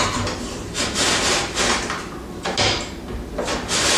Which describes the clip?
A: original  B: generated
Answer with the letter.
A